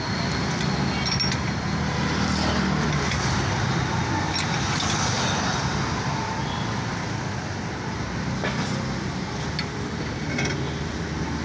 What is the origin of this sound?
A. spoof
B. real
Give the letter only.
B